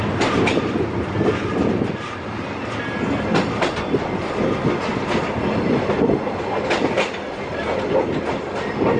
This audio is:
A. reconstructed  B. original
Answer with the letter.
B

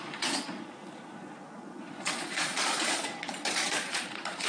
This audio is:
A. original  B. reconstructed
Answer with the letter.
B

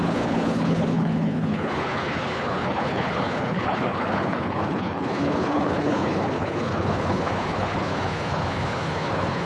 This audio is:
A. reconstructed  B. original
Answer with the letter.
A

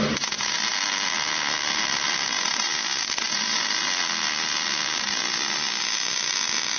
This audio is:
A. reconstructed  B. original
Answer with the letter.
B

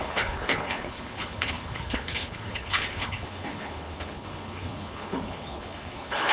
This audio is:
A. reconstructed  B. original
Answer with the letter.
A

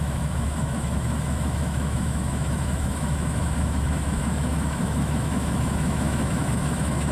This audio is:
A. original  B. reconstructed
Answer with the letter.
B